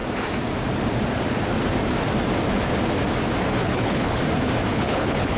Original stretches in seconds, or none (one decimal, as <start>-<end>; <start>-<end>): 0.0-3.6; 4.2-4.7